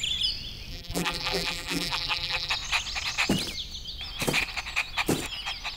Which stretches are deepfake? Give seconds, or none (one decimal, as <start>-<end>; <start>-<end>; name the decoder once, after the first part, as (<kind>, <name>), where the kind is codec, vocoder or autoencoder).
0.7-2.5 (vocoder, BigVGAN v2)